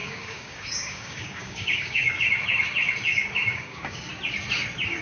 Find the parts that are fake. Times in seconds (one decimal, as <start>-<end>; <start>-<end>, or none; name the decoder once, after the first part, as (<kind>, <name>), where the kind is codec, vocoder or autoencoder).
0.0-2.2 (codec, DAC); 3.1-4.1